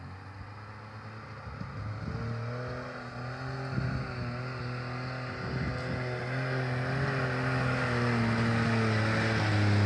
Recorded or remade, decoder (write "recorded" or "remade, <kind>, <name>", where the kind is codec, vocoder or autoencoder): recorded